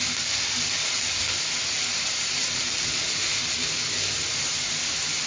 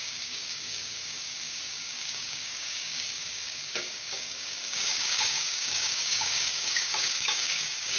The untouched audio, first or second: first